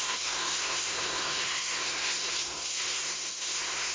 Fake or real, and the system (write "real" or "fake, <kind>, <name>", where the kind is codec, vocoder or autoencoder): fake, codec, SNAC